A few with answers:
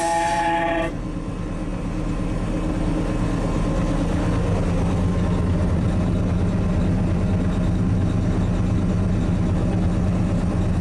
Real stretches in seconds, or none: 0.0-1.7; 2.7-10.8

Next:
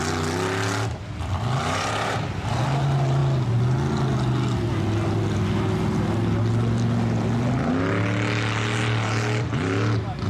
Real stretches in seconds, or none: 0.0-10.3

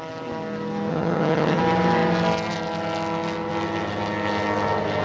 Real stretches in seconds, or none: 0.0-0.9; 1.6-5.0

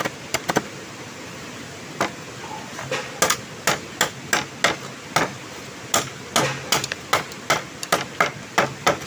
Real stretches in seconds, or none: 0.0-9.1

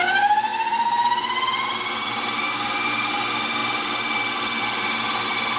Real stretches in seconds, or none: 0.0-5.6

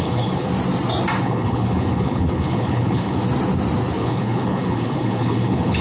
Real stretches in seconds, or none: 0.5-1.2; 3.2-3.9

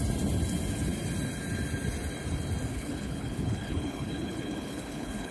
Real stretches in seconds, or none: 0.0-2.7